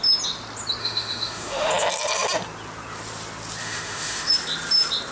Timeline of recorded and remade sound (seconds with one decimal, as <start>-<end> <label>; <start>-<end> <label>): 0.0-0.8 recorded; 0.8-1.7 remade; 1.7-3.6 recorded; 3.6-4.3 remade; 4.3-5.1 recorded